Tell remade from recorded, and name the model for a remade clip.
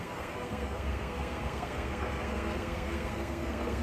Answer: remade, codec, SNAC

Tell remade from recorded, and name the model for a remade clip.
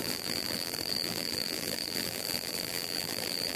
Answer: remade, vocoder, BigVGAN v2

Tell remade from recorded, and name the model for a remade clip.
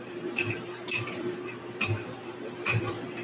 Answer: remade, vocoder, BigVGAN v2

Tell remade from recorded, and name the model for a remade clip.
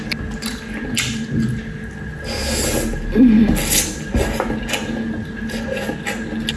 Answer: recorded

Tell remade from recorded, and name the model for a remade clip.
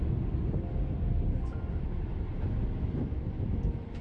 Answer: recorded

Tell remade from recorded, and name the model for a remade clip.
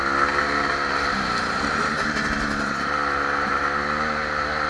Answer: recorded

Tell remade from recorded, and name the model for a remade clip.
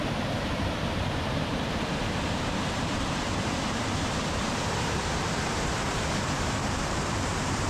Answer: remade, vocoder, BigVGAN v2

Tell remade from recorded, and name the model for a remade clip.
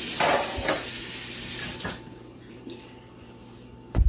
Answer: recorded